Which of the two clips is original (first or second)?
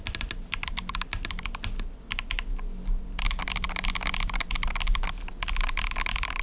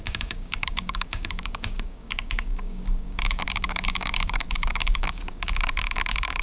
first